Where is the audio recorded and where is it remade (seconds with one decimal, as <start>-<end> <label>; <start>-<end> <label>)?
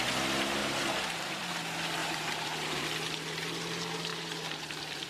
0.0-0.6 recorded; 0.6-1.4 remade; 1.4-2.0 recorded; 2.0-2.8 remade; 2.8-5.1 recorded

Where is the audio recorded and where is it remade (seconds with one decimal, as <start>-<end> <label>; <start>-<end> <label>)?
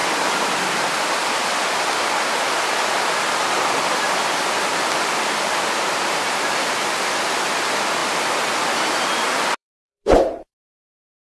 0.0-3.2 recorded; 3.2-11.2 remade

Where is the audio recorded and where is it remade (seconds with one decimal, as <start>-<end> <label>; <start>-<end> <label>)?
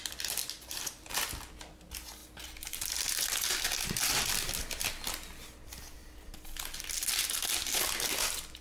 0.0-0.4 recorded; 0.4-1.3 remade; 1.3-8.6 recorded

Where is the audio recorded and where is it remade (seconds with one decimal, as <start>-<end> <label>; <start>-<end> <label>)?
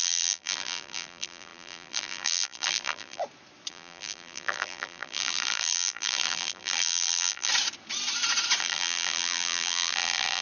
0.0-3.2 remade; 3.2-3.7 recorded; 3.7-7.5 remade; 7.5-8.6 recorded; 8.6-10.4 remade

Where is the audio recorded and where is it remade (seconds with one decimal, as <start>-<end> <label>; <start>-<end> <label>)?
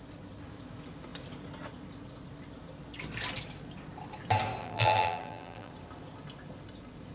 0.0-4.6 recorded; 4.6-5.7 remade; 5.7-7.1 recorded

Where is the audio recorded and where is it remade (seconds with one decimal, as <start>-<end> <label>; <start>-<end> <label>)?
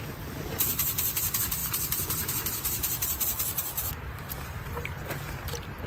0.0-0.7 recorded; 0.7-1.2 remade; 1.2-1.6 recorded; 1.6-5.1 remade; 5.1-5.9 recorded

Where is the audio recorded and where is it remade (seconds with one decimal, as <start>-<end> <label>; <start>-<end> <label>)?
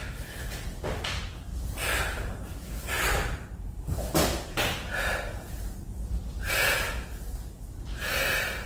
0.0-1.5 recorded; 1.5-6.5 remade; 6.5-8.7 recorded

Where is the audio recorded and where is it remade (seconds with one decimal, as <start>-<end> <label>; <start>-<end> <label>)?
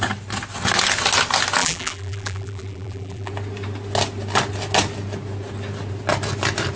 0.0-1.6 recorded; 1.6-3.3 remade; 3.3-6.8 recorded